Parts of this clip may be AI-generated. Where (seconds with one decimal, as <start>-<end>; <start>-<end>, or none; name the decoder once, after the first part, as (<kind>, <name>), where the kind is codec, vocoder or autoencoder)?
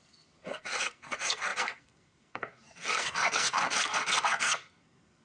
0.0-5.2 (codec, SNAC)